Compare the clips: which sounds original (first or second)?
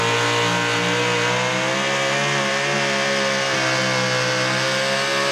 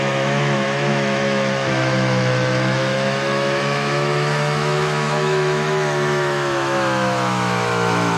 first